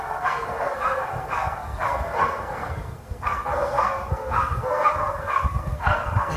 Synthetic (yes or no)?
yes